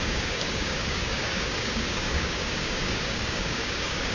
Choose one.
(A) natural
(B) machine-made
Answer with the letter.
B